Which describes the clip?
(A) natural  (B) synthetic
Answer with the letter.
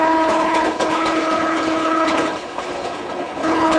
B